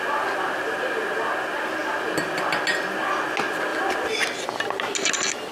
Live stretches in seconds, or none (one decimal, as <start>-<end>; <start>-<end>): 0.0-3.7; 4.2-5.5